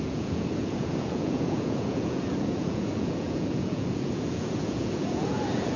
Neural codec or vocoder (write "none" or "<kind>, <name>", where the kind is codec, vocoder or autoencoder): vocoder, Vocos